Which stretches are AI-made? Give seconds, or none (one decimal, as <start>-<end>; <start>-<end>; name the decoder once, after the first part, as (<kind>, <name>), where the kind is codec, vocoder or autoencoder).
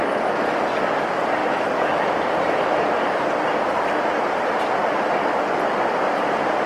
1.4-2.0 (autoencoder, DAC-VAE)